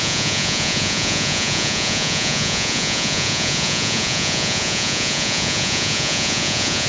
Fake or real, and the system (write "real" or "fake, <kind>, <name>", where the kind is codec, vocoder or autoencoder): fake, vocoder, Vocos